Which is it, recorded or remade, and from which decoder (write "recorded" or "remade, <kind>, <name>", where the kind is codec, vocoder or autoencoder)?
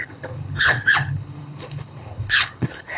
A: remade, codec, HILCodec